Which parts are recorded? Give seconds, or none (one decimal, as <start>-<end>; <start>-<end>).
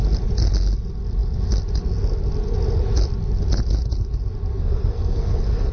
0.0-4.5